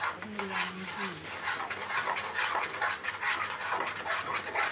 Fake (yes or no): no